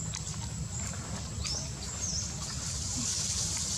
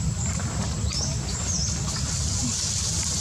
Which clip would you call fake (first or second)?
second